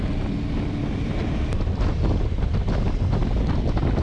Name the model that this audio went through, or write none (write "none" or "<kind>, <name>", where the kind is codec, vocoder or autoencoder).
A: none